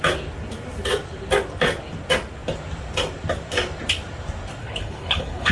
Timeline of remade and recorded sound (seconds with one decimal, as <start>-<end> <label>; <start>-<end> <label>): 0.0-4.6 recorded; 4.6-5.5 remade